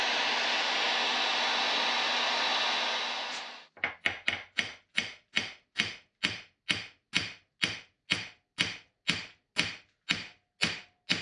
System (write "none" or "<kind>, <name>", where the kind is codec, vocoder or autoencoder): none